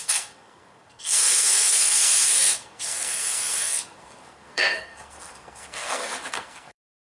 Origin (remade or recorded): remade